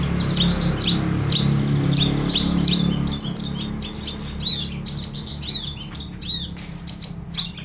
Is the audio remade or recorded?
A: recorded